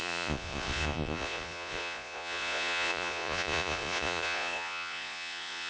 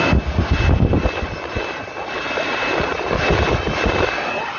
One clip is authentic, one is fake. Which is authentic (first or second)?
second